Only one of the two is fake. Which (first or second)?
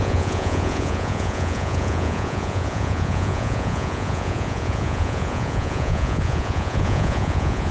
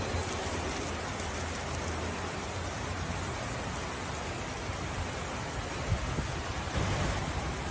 first